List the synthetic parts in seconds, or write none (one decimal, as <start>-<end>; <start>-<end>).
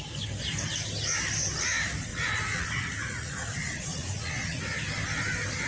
2.1-4.6